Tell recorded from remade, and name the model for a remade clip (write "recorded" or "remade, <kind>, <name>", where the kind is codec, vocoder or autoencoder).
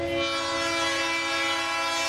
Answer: recorded